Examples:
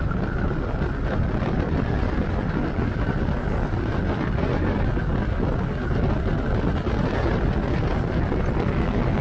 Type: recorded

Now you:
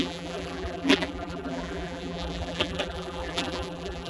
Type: remade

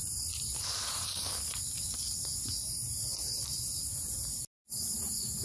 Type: recorded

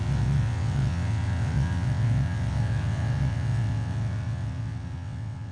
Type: remade